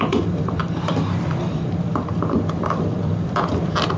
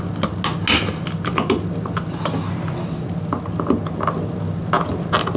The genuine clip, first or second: second